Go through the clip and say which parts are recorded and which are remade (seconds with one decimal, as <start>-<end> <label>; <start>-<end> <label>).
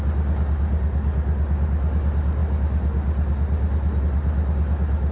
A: 0.0-5.1 recorded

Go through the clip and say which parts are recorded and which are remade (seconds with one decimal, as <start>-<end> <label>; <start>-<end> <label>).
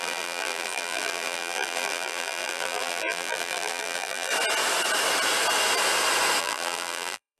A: 0.0-4.3 remade; 4.3-6.4 recorded; 6.4-7.4 remade